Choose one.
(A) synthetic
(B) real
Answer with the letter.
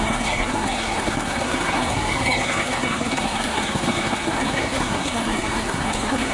A